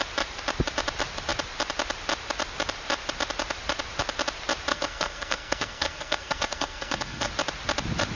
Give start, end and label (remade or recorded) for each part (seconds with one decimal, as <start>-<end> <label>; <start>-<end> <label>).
0.0-4.7 recorded; 4.7-7.3 remade; 7.3-8.2 recorded